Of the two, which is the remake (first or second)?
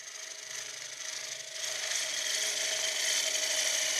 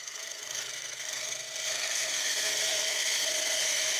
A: second